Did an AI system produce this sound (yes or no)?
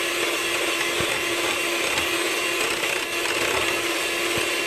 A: no